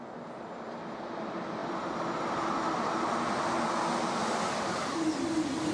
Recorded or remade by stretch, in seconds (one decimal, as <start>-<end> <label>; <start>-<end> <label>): 0.0-5.7 recorded